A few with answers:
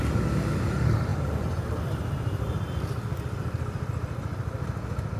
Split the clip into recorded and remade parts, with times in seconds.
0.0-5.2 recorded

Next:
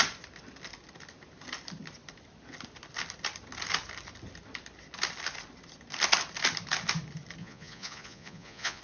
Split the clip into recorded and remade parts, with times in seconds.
0.0-7.4 recorded; 7.4-8.8 remade

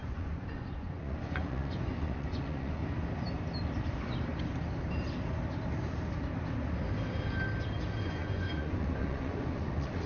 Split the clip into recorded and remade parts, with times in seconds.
0.0-2.8 remade; 2.8-8.0 recorded; 8.0-10.1 remade

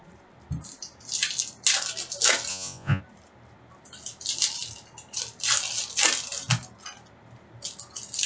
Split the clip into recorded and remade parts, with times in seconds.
0.0-2.5 recorded; 2.5-3.0 remade; 3.0-8.3 recorded

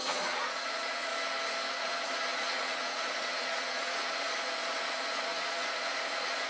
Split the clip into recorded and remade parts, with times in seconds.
0.0-1.1 remade; 1.1-1.7 recorded; 1.7-6.5 remade

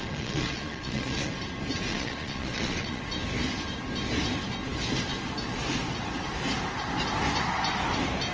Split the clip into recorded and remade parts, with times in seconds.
0.0-1.3 remade; 1.3-1.9 recorded; 1.9-3.0 remade; 3.0-8.3 recorded

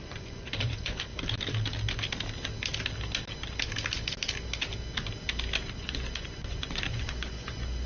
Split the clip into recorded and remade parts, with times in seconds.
0.0-1.1 remade; 1.1-5.8 recorded; 5.8-7.9 remade